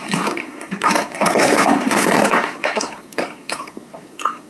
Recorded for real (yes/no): no